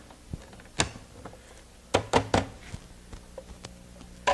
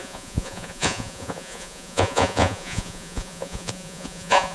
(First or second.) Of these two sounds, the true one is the first